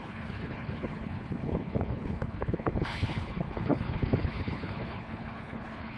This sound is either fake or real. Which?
fake